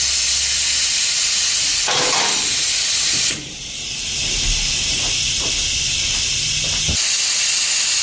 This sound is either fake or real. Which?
real